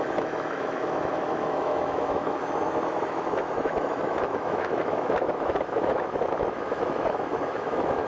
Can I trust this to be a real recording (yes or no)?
no